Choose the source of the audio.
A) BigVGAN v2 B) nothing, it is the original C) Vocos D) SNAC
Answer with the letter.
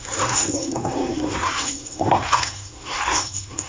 D